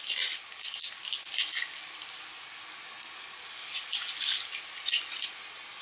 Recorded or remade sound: recorded